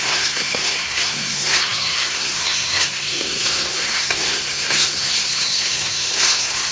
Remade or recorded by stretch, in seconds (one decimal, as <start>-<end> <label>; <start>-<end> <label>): 0.0-6.7 remade